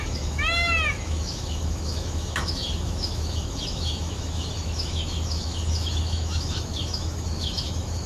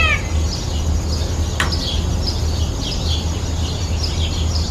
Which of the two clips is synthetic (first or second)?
first